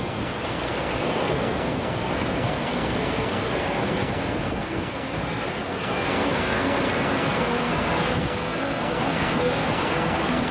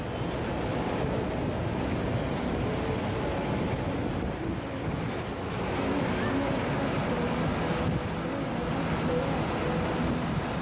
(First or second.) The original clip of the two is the second